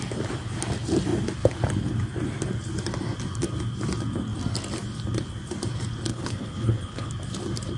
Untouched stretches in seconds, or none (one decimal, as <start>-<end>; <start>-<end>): 0.0-6.1; 7.1-7.8